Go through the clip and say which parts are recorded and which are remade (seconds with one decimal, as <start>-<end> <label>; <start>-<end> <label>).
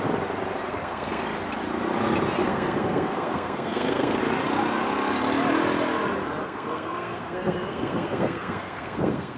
0.0-0.7 recorded; 0.7-1.2 remade; 1.2-2.4 recorded; 2.4-4.2 remade; 4.2-6.4 recorded; 6.4-9.4 remade